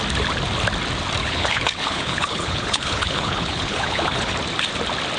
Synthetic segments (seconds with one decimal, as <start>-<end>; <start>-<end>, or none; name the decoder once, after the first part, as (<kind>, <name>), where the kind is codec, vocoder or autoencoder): 1.2-4.3 (codec, HILCodec)